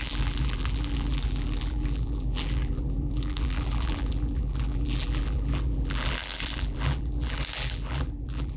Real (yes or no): no